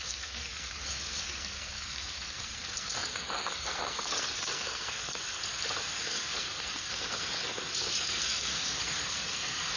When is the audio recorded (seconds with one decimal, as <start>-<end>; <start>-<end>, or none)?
none